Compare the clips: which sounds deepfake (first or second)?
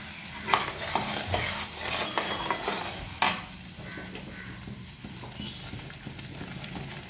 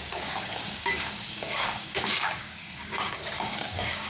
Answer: second